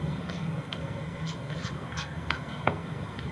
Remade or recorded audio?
remade